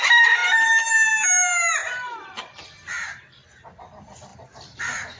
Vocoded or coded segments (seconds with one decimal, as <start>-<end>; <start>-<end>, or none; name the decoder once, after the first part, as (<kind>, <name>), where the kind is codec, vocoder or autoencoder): 0.4-0.9 (vocoder, BigVGAN v2); 1.8-2.6; 4.3-5.2